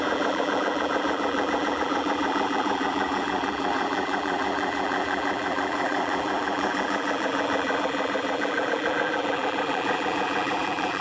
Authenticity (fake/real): fake